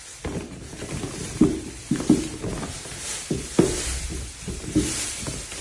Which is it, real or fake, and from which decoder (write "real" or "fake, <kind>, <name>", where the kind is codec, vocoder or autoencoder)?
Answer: real